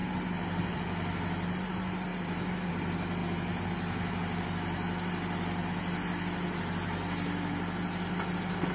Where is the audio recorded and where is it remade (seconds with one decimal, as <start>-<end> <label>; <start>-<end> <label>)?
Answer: 0.0-8.7 recorded